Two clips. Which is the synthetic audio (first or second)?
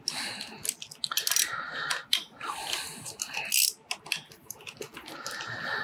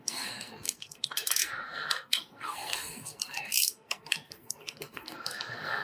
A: second